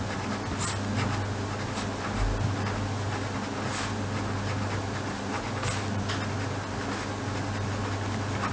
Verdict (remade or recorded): recorded